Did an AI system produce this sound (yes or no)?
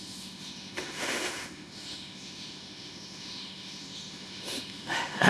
yes